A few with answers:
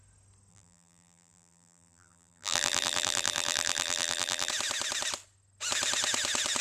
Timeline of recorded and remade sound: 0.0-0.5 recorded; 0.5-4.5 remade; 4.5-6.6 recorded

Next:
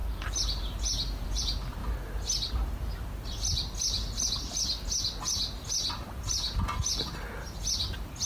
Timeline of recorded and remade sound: 0.0-1.4 remade; 1.4-8.3 recorded

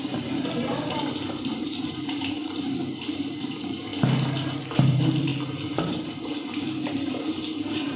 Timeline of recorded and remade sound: 0.0-3.9 remade; 3.9-4.6 recorded; 4.6-5.3 remade; 5.3-5.8 recorded; 5.8-8.0 remade

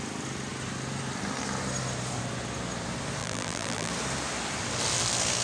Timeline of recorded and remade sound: 0.0-3.2 recorded; 3.2-3.9 remade; 3.9-5.4 recorded

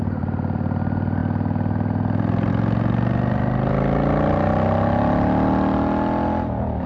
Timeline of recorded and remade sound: 0.0-6.9 recorded